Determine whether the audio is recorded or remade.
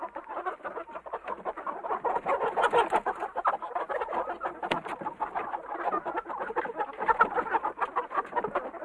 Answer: recorded